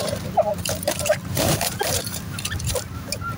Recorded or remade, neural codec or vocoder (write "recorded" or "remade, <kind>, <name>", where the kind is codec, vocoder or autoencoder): remade, vocoder, BigVGAN v2